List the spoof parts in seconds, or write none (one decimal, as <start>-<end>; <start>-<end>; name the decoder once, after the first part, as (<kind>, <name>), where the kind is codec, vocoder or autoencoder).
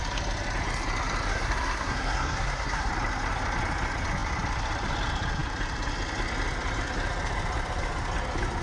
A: 1.3-2.9 (codec, SNAC)